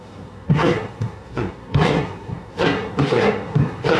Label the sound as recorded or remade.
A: remade